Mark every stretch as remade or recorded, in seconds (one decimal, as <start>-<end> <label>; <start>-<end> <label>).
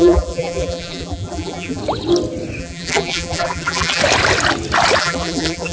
0.0-1.8 remade; 1.8-2.6 recorded; 2.6-4.0 remade; 4.0-5.0 recorded; 5.0-5.7 remade